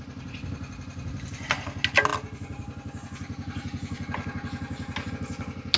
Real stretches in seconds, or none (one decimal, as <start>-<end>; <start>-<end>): 0.0-5.8